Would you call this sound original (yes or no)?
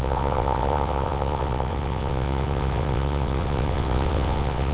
no